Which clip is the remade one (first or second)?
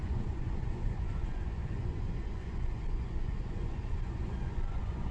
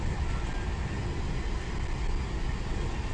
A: first